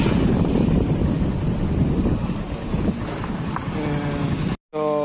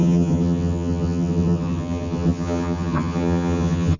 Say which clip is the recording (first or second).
first